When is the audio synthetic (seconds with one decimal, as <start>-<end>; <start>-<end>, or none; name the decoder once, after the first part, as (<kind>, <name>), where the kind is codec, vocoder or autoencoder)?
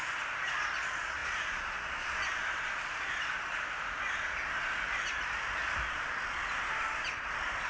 none